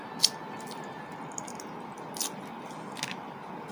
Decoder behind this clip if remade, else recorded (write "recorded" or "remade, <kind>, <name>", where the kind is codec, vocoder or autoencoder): recorded